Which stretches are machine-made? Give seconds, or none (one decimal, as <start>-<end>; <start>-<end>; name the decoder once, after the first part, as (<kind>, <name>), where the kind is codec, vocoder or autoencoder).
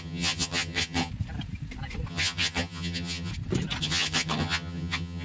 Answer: 0.0-1.1 (vocoder, HiFi-GAN); 2.1-3.3; 3.8-5.2